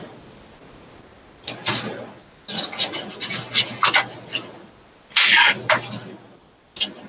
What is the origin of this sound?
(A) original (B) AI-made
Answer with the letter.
A